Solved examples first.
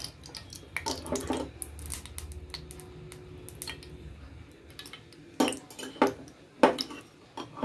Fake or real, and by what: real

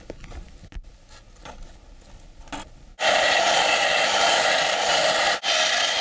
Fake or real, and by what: real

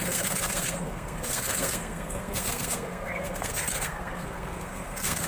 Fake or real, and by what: fake, codec, SNAC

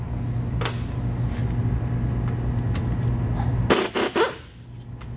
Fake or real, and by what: real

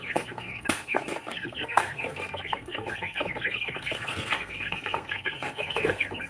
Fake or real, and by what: fake, codec, SNAC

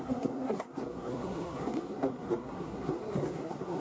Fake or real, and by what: fake, codec, SNAC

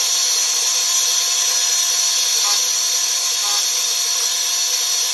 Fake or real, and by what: real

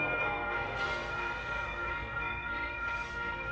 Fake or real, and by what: fake, codec, SNAC